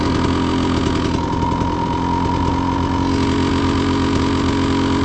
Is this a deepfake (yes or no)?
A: no